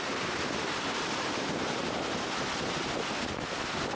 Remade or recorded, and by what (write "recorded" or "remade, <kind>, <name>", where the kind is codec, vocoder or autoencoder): remade, vocoder, BigVGAN v2